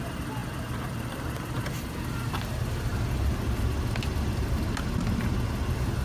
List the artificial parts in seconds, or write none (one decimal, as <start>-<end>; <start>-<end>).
none